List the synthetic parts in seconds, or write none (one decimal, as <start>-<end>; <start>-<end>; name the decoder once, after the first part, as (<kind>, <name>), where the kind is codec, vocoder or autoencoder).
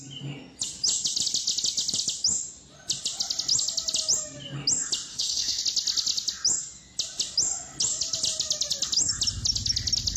5.1-5.6 (autoencoder, DAC-VAE)